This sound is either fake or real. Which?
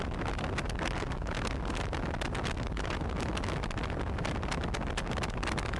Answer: real